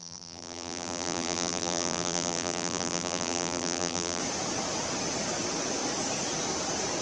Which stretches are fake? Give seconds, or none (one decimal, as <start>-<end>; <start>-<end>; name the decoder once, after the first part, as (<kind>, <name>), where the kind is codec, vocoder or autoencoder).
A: 0.0-4.2 (vocoder, BigVGAN v2)